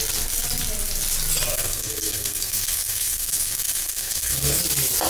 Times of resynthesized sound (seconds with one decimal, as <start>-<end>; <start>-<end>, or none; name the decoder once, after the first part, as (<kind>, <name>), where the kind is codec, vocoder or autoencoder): 1.5-4.6 (codec, SNAC)

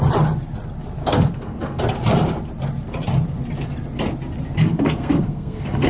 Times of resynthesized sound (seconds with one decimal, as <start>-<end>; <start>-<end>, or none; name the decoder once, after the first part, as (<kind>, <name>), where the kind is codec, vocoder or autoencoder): 1.0-1.8 (codec, SNAC); 4.6-5.9

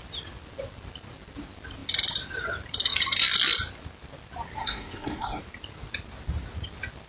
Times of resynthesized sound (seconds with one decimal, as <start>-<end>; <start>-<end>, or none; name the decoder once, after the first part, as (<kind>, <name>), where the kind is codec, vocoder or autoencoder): 4.6-5.4 (codec, SNAC)

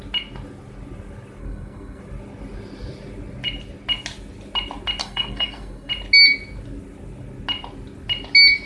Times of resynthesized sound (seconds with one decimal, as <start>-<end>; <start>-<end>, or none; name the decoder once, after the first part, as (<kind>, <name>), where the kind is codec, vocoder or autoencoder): 1.4-2.0 (codec, SNAC); 5.0-5.9

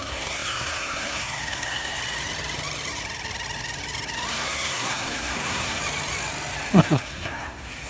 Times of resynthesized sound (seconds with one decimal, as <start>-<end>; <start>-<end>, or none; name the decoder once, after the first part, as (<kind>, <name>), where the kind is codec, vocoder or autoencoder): 0.0-2.0 (codec, SNAC); 4.3-5.8; 6.7-7.9

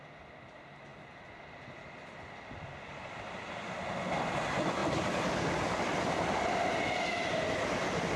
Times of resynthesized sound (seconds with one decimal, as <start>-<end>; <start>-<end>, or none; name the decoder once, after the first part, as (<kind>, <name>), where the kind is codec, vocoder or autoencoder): none

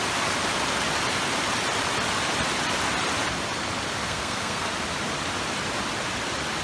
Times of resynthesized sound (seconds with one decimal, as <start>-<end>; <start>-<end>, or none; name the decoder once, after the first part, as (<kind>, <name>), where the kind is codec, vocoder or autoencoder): 4.0-4.7 (codec, SNAC)